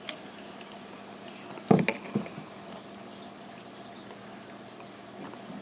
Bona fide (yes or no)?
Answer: yes